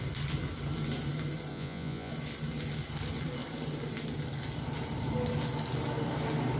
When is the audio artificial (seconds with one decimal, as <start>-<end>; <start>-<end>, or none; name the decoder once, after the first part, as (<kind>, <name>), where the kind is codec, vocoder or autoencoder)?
1.5-2.1 (vocoder, Vocos)